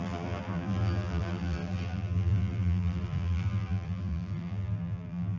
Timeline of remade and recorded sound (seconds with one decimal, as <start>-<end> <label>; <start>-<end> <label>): 0.0-5.4 remade